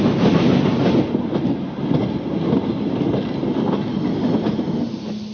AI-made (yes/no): no